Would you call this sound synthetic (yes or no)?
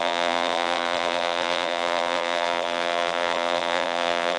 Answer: yes